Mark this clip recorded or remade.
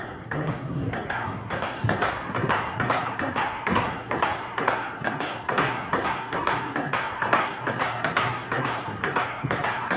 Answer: remade